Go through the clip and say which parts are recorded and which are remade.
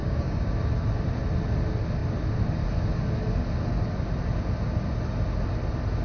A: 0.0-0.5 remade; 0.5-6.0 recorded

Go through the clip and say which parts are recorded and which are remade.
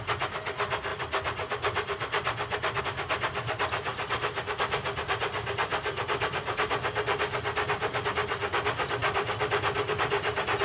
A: 0.0-10.6 recorded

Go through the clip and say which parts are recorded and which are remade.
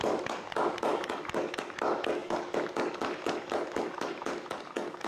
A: 0.0-5.1 remade